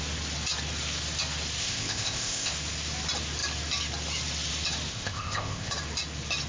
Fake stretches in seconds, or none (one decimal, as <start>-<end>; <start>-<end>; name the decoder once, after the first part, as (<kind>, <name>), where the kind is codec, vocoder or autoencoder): 1.6-2.5 (codec, ZipCodec); 4.9-5.7